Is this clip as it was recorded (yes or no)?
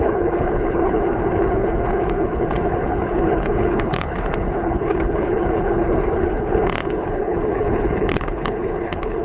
no